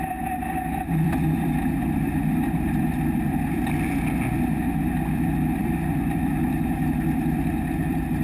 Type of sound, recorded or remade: remade